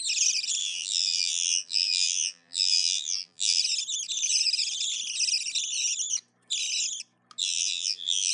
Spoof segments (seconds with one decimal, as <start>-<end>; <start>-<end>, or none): 0.6-3.6; 7.4-8.3